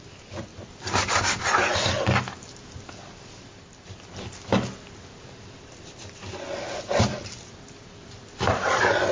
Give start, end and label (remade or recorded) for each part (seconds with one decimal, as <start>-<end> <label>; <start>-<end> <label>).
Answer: 0.0-9.1 recorded